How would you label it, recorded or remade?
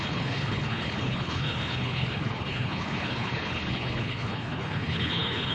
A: remade